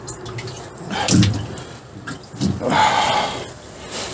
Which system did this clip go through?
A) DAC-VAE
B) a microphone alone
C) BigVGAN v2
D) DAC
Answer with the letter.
B